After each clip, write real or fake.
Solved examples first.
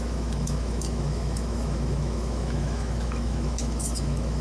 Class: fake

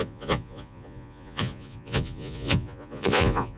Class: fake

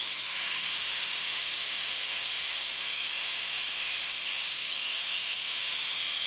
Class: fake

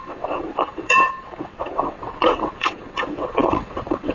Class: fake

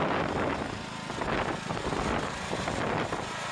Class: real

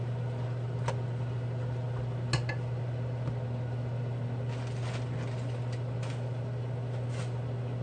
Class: real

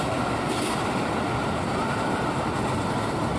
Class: real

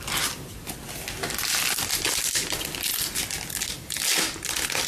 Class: real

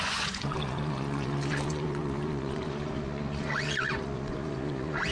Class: fake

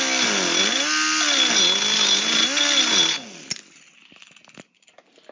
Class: real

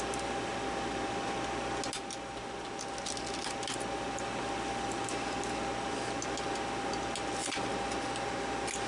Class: real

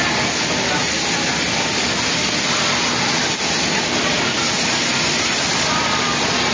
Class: real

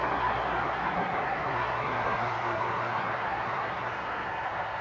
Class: fake